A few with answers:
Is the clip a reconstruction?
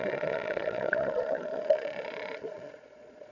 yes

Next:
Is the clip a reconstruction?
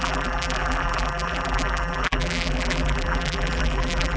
yes